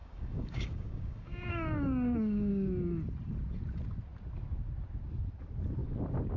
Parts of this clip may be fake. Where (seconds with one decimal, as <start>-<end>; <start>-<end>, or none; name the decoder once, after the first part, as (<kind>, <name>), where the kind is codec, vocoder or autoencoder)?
0.0-2.5 (codec, DAC)

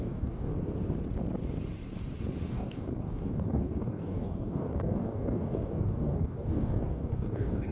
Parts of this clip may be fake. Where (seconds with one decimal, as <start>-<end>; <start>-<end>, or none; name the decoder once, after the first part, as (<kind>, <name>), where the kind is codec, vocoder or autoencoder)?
0.0-0.5 (codec, DAC); 2.5-7.7

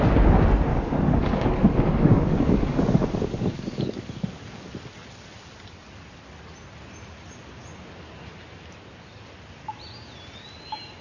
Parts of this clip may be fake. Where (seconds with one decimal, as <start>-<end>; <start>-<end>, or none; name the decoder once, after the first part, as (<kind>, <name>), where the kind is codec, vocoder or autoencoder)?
0.7-4.7 (codec, DAC)

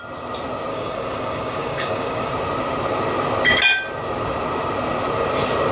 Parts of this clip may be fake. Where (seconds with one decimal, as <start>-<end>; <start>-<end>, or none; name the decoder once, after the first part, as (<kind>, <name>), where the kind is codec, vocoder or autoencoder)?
0.7-2.3 (codec, DAC)

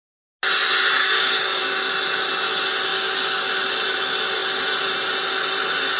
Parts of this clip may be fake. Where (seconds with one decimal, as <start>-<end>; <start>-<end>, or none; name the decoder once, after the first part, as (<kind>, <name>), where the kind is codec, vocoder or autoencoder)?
1.0-1.9 (codec, DAC); 2.9-3.5

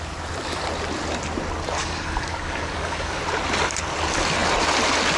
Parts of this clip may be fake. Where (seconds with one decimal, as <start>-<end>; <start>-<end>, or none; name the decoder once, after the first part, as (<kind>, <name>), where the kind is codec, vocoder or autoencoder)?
1.8-3.2 (codec, DAC)

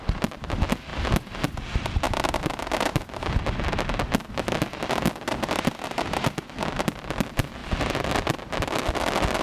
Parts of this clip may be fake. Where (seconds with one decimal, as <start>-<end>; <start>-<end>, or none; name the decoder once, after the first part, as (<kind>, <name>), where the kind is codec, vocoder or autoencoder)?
none